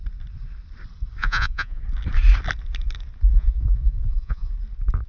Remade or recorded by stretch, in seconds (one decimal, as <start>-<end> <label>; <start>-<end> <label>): 0.0-1.2 recorded; 1.2-1.8 remade; 1.8-3.3 recorded; 3.3-4.5 remade; 4.5-5.1 recorded